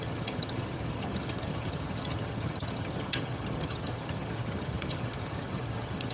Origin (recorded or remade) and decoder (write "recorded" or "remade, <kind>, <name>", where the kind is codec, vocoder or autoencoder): remade, vocoder, HiFi-GAN